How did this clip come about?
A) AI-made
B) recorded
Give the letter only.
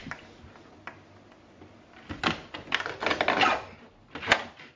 B